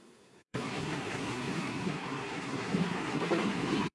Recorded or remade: remade